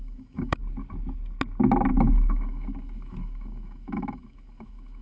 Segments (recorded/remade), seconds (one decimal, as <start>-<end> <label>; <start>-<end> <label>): 0.0-0.6 remade; 0.6-1.9 recorded; 1.9-5.0 remade